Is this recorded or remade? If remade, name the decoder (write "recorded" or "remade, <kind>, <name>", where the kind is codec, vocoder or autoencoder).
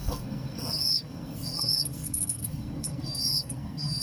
remade, codec, SNAC